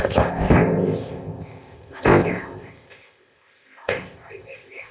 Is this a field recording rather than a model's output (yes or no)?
no